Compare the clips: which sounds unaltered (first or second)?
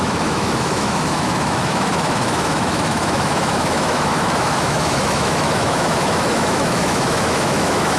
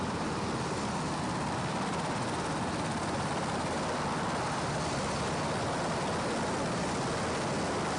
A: second